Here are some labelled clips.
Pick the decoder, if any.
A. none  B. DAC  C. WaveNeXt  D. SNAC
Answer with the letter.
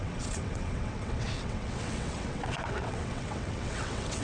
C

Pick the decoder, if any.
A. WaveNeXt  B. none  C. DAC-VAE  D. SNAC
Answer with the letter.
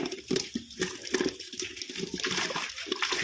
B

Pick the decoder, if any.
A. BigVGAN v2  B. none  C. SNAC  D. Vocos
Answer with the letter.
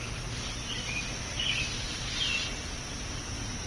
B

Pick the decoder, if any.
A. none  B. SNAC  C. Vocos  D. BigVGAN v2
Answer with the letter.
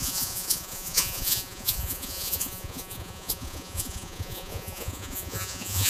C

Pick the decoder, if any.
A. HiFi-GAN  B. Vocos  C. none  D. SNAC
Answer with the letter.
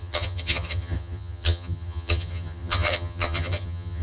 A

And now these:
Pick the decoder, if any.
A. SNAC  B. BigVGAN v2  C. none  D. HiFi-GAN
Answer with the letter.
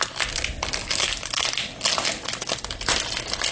C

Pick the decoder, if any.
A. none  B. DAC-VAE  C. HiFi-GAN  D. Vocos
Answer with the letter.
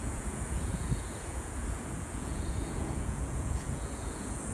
D